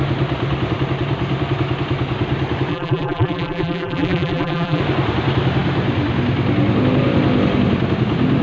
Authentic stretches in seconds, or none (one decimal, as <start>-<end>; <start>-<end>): 0.0-2.7; 4.8-8.4